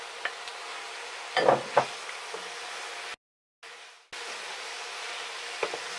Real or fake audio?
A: real